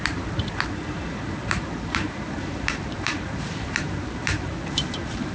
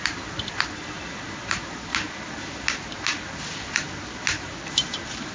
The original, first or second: second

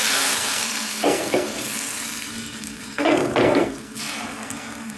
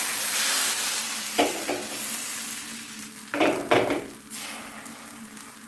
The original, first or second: second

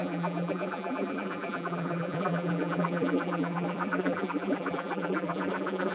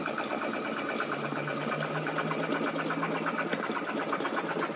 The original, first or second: second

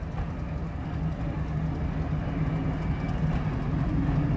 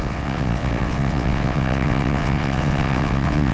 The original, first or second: first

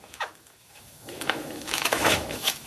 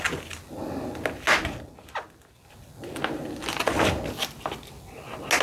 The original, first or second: second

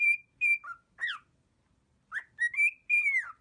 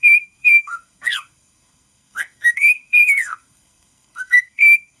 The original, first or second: first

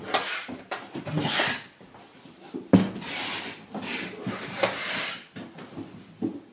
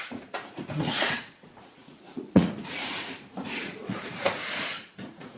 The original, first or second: first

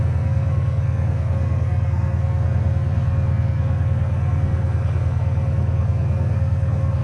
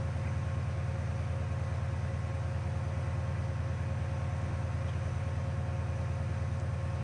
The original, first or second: second